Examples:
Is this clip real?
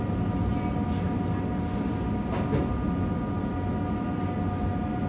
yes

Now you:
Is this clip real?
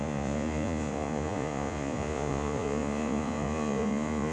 no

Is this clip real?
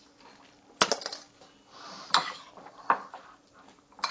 yes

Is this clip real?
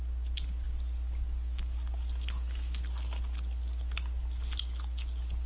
yes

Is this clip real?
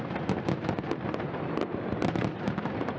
yes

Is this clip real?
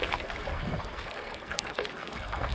no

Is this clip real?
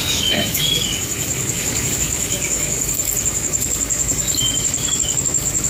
no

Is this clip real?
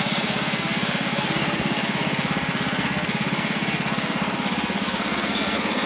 no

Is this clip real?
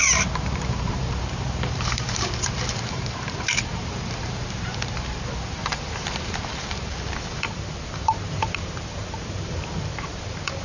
no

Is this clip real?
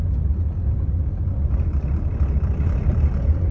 yes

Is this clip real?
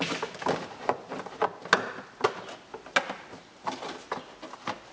yes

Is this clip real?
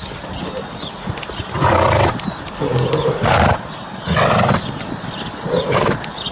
yes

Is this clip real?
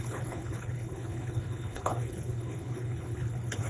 no